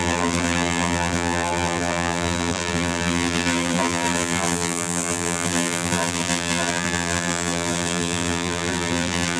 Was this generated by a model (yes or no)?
yes